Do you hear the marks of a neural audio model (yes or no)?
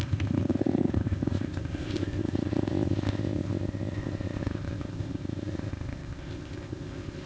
yes